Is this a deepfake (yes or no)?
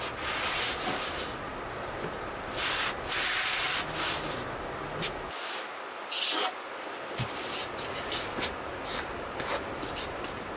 no